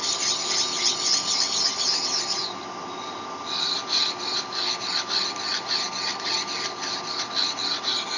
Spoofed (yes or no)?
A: no